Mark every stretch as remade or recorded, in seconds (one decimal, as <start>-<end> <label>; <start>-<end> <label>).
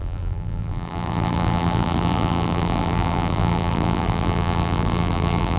0.0-5.6 remade